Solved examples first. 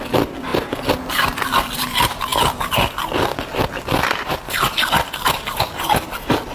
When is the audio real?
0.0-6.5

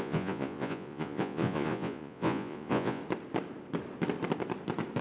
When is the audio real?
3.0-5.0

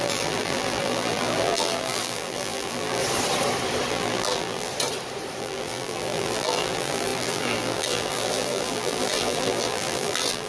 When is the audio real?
3.0-3.9; 4.7-5.4

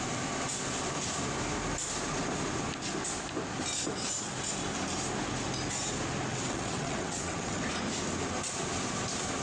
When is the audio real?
0.0-6.3; 7.6-9.4